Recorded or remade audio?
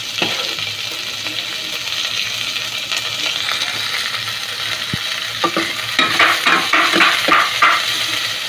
recorded